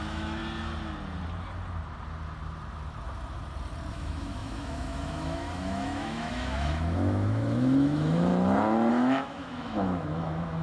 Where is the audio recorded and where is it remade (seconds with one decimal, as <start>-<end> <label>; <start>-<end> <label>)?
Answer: 0.0-0.4 remade; 0.4-3.9 recorded; 3.9-8.3 remade; 8.3-8.9 recorded; 8.9-10.6 remade